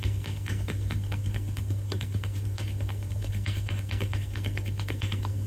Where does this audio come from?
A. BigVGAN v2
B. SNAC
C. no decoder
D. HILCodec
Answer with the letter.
B